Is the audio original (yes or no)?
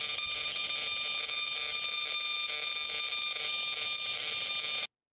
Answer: yes